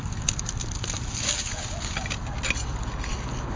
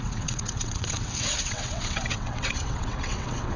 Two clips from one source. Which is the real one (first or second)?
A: first